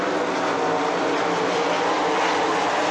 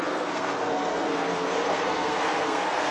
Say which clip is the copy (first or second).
second